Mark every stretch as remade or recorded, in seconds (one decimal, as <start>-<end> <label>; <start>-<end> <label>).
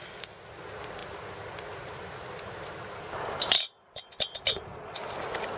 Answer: 0.0-5.6 recorded